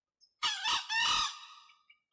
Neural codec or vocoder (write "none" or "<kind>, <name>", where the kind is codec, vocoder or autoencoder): none